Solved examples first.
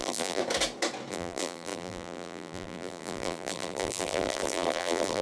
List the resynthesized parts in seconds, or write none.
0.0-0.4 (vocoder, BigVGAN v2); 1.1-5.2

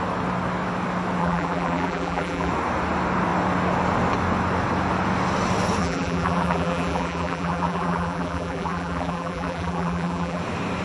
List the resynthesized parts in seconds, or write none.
1.2-2.5 (vocoder, BigVGAN v2); 5.8-10.4

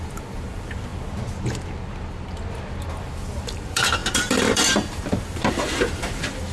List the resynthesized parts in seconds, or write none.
0.0-0.9 (vocoder, BigVGAN v2); 3.4-6.5

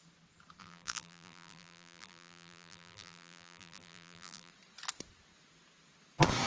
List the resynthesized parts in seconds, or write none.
0.6-4.5 (vocoder, BigVGAN v2)

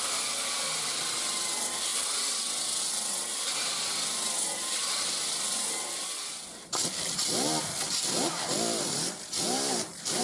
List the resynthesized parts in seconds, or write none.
4.5-10.2 (vocoder, BigVGAN v2)